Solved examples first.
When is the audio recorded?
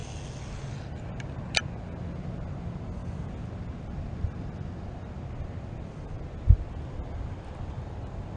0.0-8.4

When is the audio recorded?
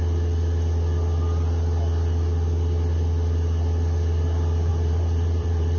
0.0-4.7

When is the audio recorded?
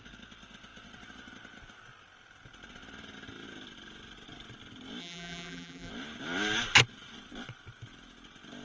0.0-5.0; 5.9-8.6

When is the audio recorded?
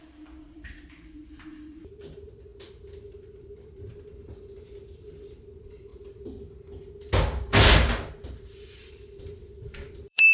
1.2-1.8; 5.9-8.3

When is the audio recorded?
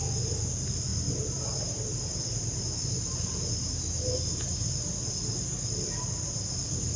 0.9-5.1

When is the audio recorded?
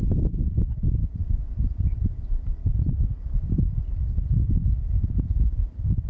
0.0-1.0; 1.6-2.0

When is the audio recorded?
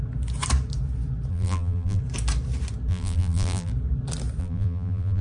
0.0-1.3; 2.0-2.9; 3.7-4.4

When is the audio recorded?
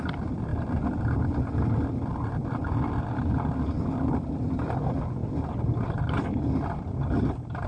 0.0-7.7